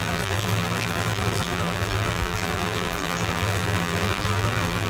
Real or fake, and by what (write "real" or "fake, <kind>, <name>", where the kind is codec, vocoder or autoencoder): fake, vocoder, BigVGAN v2